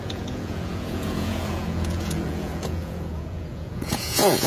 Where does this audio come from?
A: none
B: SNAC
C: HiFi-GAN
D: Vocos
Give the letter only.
D